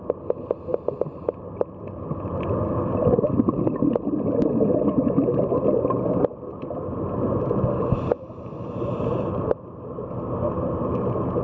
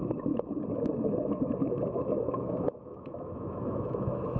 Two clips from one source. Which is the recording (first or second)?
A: first